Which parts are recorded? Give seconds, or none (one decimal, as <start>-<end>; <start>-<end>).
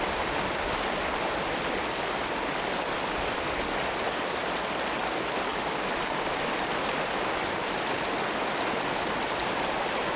0.0-10.2